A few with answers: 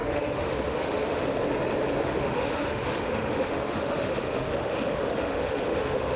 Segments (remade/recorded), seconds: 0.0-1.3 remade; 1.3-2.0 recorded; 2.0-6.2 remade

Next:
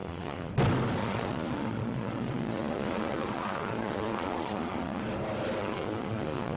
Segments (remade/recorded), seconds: 0.0-0.5 remade; 0.5-1.0 recorded; 1.0-5.0 remade; 5.0-5.6 recorded; 5.6-6.6 remade

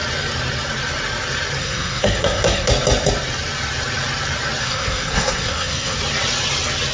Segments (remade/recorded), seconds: 0.0-1.6 recorded; 1.6-2.7 remade; 2.7-4.6 recorded; 4.6-6.0 remade; 6.0-6.9 recorded

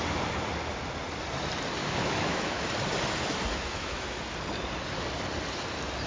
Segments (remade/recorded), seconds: 0.0-1.8 recorded; 1.8-2.7 remade; 2.7-3.5 recorded; 3.5-4.2 remade; 4.2-6.1 recorded

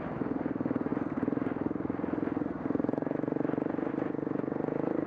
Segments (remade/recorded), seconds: 0.0-5.1 recorded